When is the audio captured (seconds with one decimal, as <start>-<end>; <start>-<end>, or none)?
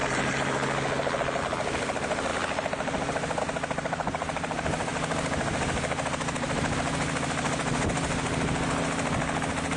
0.0-9.8